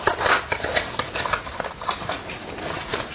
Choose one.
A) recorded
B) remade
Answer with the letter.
A